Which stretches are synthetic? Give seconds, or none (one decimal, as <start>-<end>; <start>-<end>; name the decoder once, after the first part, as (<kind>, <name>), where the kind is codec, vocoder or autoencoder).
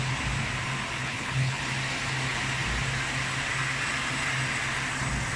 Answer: 1.0-1.6 (codec, HILCodec)